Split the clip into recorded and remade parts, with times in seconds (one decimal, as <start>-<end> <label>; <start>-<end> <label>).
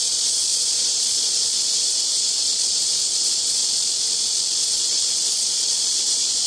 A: 0.0-3.6 remade; 3.6-4.6 recorded; 4.6-6.5 remade